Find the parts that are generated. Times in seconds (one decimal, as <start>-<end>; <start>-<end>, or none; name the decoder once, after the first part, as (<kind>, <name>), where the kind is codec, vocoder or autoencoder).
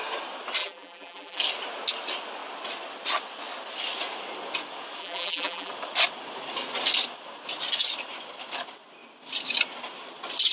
0.6-1.4 (vocoder, BigVGAN v2); 5.0-5.7